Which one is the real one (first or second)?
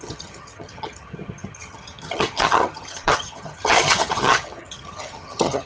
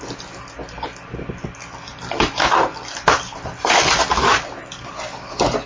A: second